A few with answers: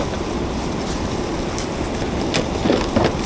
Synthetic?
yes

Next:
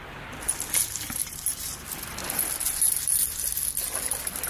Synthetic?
no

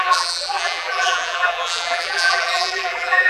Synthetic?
yes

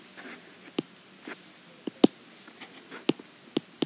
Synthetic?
no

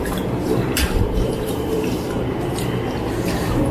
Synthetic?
yes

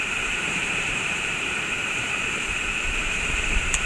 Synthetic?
yes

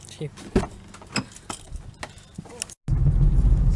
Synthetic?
no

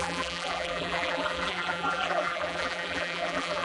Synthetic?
yes